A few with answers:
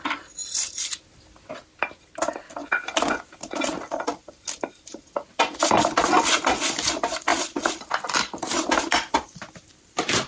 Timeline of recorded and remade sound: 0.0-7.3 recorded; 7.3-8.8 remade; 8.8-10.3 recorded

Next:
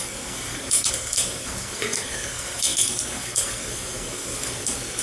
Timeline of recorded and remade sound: 0.0-5.0 remade

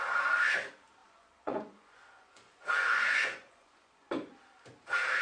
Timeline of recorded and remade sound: 0.0-1.0 recorded; 1.0-4.1 remade; 4.1-5.2 recorded

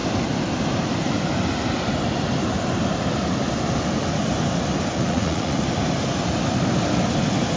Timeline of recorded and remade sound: 0.0-4.9 recorded; 4.9-5.6 remade; 5.6-7.6 recorded

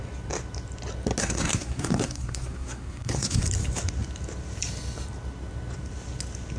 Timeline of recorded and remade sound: 0.0-1.2 recorded; 1.2-3.4 remade; 3.4-6.6 recorded

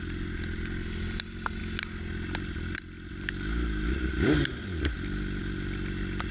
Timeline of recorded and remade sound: 0.0-6.3 recorded